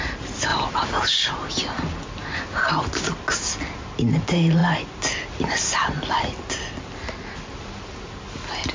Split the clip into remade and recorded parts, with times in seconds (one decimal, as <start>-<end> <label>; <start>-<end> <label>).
0.0-8.7 recorded